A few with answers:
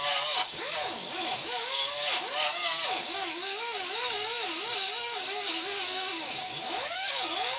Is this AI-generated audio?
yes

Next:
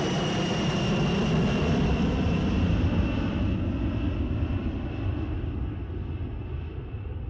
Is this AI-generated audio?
no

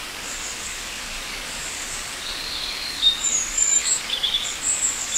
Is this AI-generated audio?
yes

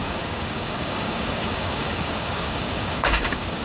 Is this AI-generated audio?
yes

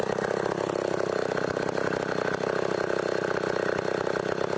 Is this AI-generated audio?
no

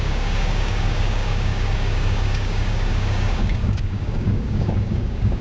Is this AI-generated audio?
yes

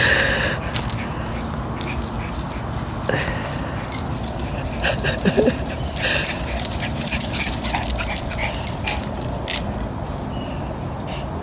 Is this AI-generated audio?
no